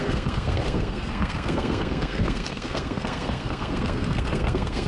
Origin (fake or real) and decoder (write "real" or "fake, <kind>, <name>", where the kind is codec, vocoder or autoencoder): fake, codec, SNAC